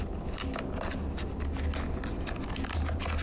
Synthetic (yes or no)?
no